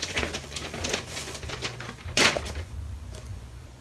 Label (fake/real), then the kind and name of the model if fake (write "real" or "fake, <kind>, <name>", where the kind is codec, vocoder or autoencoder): fake, vocoder, Vocos